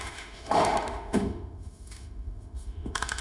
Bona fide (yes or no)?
no